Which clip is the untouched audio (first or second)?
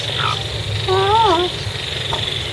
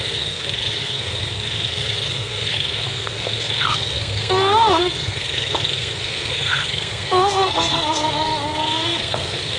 first